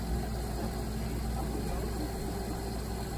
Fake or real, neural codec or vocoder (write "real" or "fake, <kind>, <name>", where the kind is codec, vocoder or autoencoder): real